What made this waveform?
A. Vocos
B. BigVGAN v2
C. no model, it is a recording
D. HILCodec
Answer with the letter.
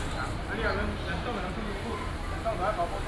C